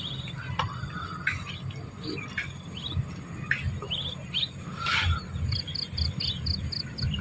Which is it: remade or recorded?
recorded